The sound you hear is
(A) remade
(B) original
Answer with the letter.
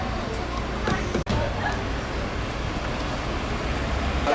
B